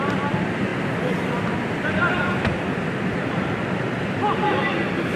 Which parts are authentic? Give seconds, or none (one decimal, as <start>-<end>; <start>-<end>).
0.0-5.2